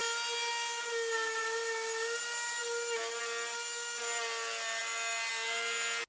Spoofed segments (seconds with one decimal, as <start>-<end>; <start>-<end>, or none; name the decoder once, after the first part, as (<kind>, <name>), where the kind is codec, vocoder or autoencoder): none